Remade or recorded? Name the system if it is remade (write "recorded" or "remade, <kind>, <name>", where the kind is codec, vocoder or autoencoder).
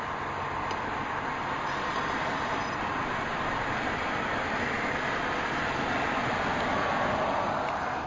recorded